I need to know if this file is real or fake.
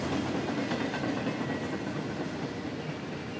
real